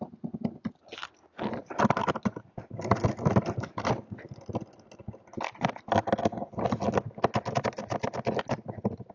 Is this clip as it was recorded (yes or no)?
yes